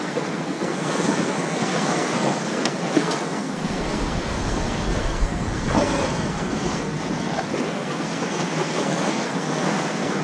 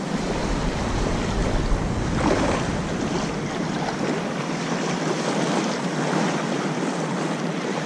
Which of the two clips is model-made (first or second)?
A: first